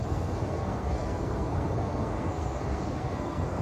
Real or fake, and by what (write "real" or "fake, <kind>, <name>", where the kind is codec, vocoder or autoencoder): fake, codec, SNAC